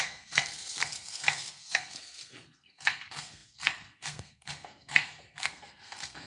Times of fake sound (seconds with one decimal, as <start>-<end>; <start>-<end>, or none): 0.0-6.3